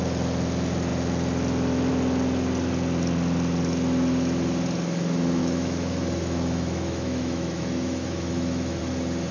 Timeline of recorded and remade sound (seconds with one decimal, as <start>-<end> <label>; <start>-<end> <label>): 0.0-5.4 recorded; 5.4-8.8 remade; 8.8-9.3 recorded